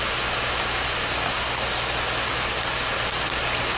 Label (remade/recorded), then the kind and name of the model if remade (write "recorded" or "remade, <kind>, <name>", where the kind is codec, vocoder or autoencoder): recorded